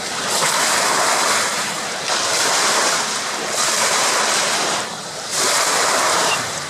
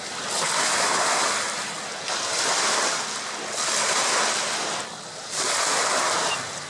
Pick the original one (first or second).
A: second